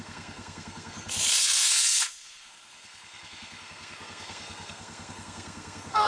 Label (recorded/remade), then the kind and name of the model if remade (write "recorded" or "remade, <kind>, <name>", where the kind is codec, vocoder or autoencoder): remade, codec, SNAC